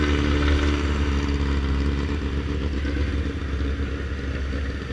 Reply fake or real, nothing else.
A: real